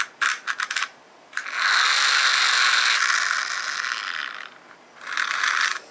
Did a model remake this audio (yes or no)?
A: no